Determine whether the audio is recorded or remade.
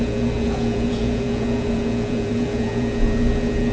remade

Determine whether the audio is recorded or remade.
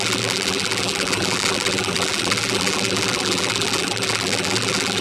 remade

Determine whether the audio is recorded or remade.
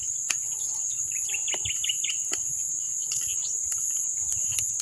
recorded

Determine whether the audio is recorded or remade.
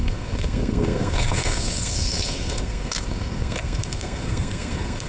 remade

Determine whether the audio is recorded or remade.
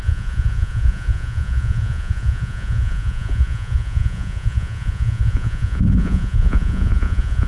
remade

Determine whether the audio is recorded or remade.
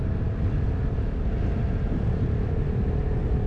recorded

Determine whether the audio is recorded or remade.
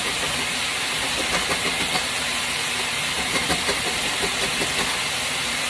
recorded